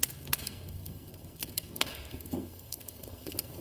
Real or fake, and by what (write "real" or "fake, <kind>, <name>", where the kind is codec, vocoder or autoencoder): fake, codec, SNAC